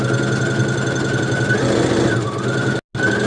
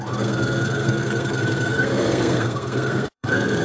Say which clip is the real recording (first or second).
first